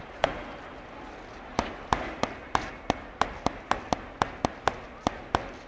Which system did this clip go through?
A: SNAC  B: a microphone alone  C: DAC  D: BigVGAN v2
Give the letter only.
B